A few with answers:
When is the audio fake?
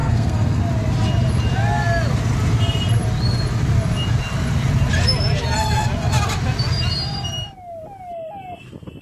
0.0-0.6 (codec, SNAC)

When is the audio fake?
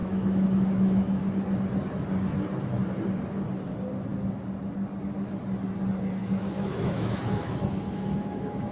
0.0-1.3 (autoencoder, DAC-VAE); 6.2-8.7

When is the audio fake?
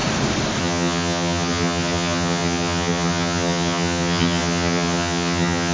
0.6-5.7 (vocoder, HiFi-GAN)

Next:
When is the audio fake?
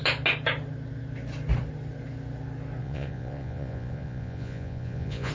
2.8-5.3 (vocoder, Vocos)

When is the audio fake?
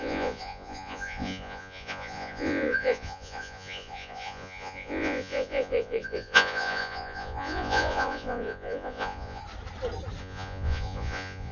0.0-9.4 (vocoder, Vocos); 10.2-11.5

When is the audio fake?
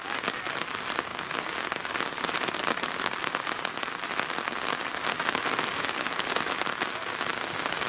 none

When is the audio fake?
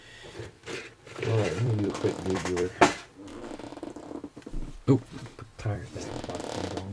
0.6-3.0 (vocoder, BigVGAN v2); 3.7-4.8; 5.5-6.1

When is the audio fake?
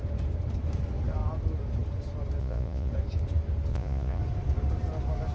2.4-2.9 (vocoder, Vocos); 3.7-4.2